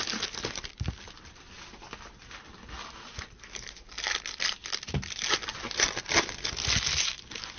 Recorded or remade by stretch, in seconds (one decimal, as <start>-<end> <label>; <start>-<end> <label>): 0.0-7.6 recorded